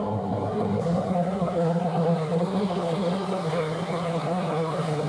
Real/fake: fake